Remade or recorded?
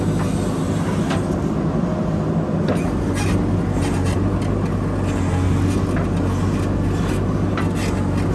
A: recorded